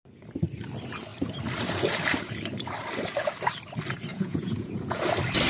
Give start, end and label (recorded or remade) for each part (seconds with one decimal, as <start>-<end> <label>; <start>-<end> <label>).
0.0-4.1 recorded; 4.1-5.0 remade; 5.0-5.5 recorded